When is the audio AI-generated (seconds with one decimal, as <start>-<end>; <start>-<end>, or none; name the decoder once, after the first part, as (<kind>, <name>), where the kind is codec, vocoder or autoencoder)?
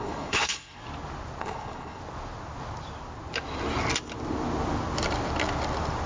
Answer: 0.0-0.8 (codec, HILCodec); 1.4-2.0